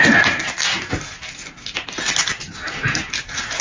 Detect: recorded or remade recorded